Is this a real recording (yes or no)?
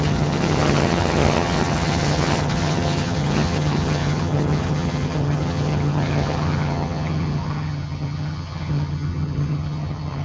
no